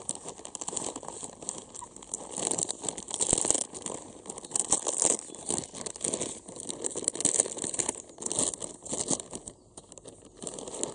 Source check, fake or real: real